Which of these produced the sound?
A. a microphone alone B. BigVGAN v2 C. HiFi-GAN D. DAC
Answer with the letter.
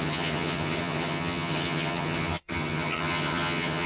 C